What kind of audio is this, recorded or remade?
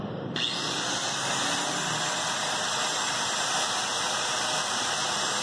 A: recorded